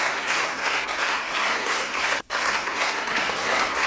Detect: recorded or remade remade